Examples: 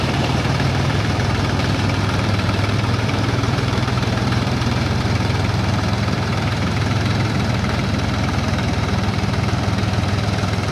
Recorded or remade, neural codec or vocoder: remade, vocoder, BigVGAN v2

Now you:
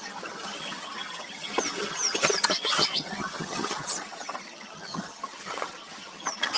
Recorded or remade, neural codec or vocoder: remade, vocoder, HiFi-GAN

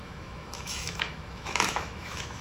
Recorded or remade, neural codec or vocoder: remade, autoencoder, DAC-VAE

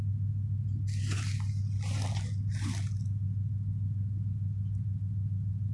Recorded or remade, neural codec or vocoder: recorded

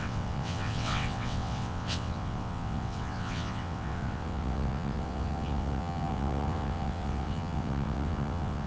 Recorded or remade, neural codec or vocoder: remade, vocoder, WaveNeXt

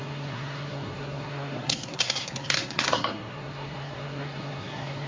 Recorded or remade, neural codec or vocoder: remade, codec, SNAC